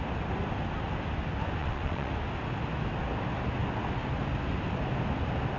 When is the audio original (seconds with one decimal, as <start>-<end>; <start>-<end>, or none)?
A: 0.0-1.6; 2.1-5.6